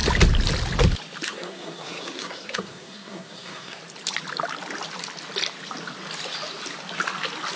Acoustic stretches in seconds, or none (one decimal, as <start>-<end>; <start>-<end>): 0.0-1.3; 3.8-7.6